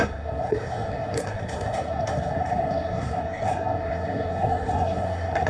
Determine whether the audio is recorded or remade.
remade